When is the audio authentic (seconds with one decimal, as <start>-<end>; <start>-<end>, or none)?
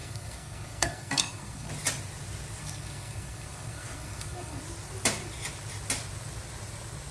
1.7-2.6; 4.6-7.1